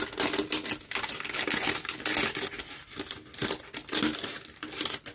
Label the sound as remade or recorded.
recorded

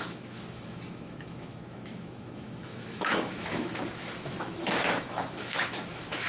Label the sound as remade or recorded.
remade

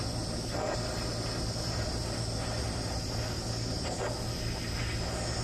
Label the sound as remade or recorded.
recorded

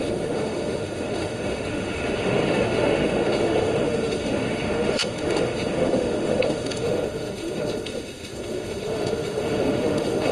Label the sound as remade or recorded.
remade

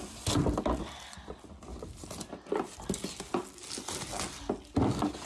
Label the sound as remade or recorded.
recorded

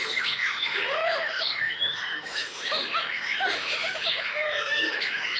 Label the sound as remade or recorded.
remade